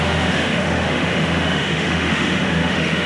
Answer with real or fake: fake